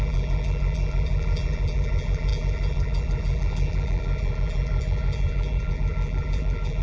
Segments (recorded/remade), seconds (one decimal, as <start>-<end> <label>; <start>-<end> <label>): 0.0-6.8 remade